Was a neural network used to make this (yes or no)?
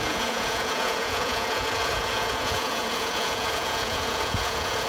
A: yes